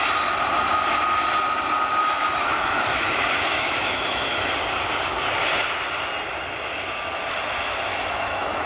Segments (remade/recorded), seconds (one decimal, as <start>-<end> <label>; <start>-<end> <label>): 0.0-2.0 recorded; 2.0-4.5 remade; 4.5-7.9 recorded; 7.9-8.7 remade